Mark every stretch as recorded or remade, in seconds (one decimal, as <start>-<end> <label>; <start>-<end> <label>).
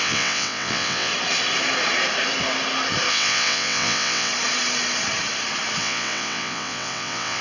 0.0-1.1 remade; 1.1-3.1 recorded; 3.1-4.3 remade; 4.3-5.8 recorded; 5.8-7.4 remade